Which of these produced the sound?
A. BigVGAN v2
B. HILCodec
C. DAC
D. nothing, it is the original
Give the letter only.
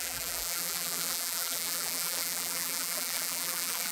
A